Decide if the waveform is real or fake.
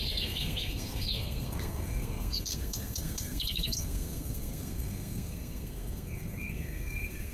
fake